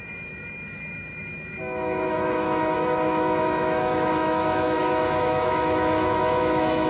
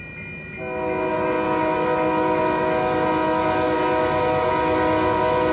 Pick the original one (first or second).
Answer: second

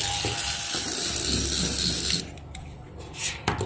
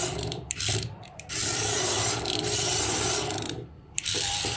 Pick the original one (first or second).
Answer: first